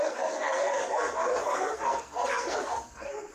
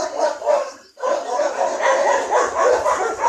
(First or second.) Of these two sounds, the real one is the second